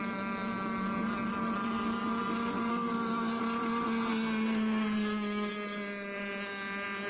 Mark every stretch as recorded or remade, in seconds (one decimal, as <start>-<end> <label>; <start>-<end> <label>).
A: 0.0-2.7 recorded; 2.7-3.4 remade; 3.4-4.1 recorded; 4.1-5.5 remade; 5.5-7.1 recorded